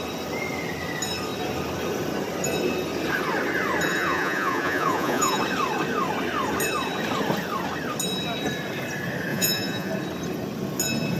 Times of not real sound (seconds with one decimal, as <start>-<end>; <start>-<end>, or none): 3.9-5.4; 9.3-9.9